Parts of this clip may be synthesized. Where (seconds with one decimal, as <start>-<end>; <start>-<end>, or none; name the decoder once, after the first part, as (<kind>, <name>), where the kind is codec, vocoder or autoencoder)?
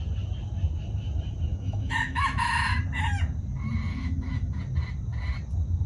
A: 1.5-2.8 (autoencoder, DAC-VAE); 3.9-4.6